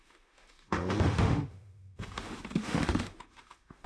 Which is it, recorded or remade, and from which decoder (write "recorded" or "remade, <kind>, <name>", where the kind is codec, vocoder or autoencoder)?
remade, autoencoder, DAC-VAE